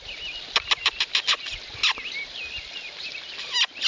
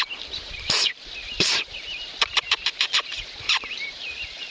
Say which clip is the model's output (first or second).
second